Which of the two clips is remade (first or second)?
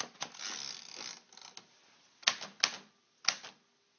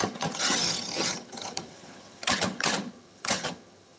second